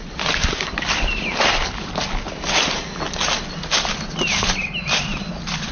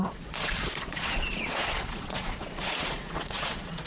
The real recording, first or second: first